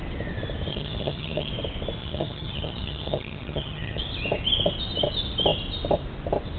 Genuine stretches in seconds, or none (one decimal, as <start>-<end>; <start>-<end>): 0.0-0.7; 1.5-2.0; 4.0-6.6